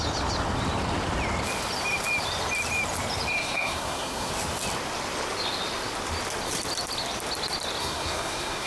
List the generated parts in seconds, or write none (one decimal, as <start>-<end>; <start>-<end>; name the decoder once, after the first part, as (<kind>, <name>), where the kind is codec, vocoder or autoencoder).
3.4-4.3 (codec, SNAC); 7.8-8.7